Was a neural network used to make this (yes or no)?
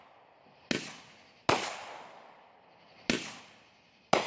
no